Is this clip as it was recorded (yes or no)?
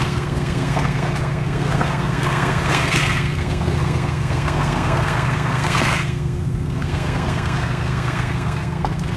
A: no